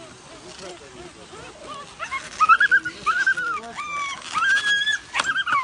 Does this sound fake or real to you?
real